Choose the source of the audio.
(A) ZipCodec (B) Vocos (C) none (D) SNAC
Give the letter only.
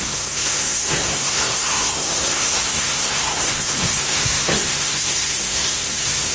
D